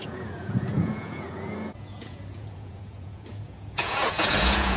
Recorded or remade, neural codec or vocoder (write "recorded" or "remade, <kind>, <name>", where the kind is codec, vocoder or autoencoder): remade, vocoder, Vocos